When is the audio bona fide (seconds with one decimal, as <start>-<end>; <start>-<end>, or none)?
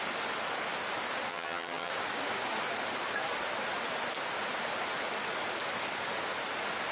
0.0-1.3; 1.9-6.9